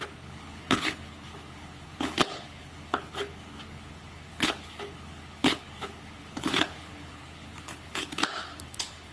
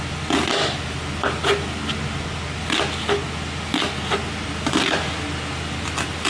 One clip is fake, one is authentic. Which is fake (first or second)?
first